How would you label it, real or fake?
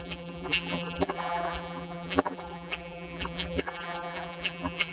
fake